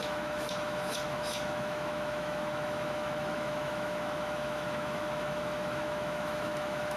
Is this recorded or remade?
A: remade